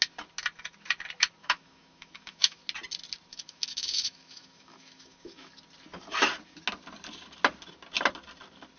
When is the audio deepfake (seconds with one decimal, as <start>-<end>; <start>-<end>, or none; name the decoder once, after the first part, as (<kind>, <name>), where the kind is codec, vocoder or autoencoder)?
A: 1.4-2.6 (autoencoder, DAC-VAE); 3.3-5.5